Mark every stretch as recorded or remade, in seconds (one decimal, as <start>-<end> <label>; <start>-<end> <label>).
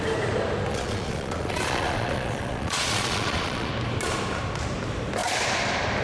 0.0-0.7 recorded; 0.7-3.7 remade; 3.7-6.0 recorded